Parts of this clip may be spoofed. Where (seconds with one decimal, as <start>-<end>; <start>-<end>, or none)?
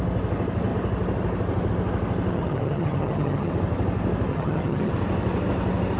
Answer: 2.3-3.5; 4.3-4.9